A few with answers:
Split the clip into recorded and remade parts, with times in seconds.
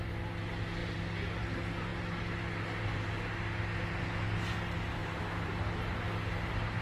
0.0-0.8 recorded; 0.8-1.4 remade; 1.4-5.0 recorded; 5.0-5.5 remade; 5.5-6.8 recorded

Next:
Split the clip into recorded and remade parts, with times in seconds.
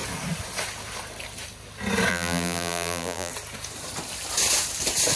0.0-2.1 recorded; 2.1-3.3 remade; 3.3-5.2 recorded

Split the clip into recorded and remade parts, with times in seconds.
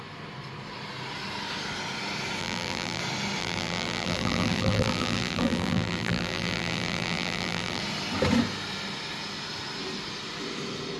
0.0-2.4 recorded; 2.4-3.0 remade; 3.0-3.4 recorded; 3.4-7.8 remade; 7.8-11.0 recorded